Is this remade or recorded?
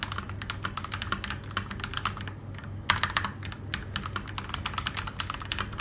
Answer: recorded